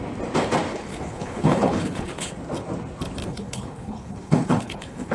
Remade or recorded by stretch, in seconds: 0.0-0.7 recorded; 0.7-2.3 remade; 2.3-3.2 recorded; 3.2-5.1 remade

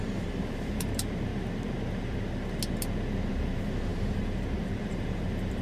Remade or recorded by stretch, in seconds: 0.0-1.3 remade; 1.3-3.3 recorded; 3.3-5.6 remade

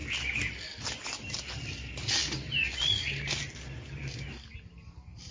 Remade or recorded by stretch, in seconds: 0.0-5.3 recorded